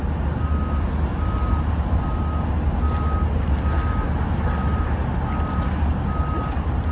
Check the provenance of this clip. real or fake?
real